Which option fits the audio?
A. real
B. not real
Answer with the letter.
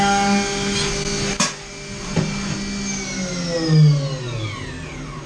A